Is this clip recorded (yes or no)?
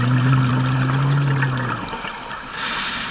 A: yes